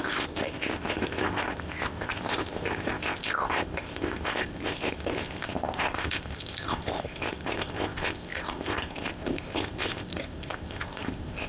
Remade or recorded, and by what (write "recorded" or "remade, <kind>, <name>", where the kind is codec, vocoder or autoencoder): remade, codec, ZipCodec